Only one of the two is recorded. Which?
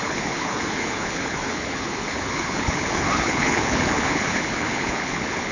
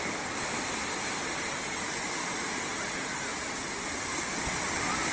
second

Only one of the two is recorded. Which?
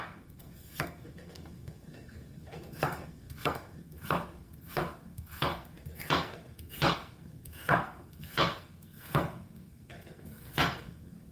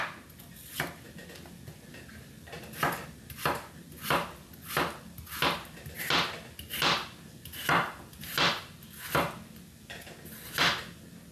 second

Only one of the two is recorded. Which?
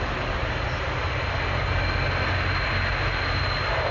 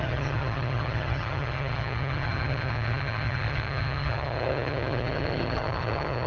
first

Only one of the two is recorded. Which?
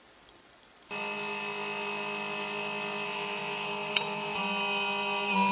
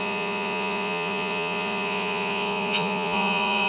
first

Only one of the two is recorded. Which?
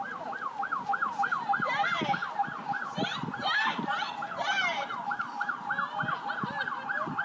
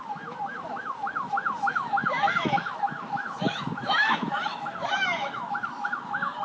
first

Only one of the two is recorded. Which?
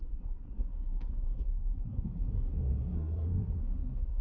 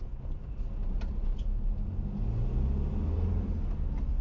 second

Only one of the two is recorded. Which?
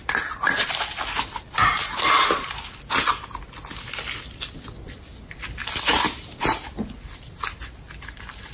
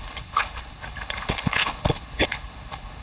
first